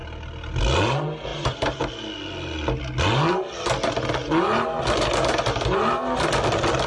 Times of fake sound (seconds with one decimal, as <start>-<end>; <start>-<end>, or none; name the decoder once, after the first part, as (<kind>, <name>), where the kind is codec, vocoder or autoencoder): 1.3-1.9 (vocoder, BigVGAN v2)